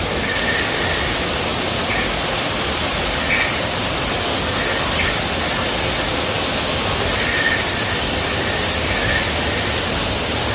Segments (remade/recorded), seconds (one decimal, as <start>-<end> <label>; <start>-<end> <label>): 0.0-10.5 recorded